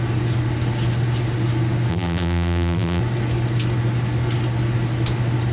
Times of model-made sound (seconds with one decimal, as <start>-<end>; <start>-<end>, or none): 1.9-3.0